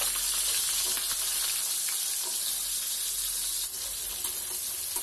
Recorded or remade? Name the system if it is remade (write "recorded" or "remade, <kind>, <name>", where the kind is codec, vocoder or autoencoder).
recorded